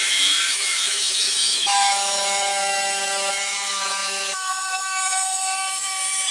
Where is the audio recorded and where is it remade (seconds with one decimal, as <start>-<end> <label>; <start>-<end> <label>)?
0.0-6.3 remade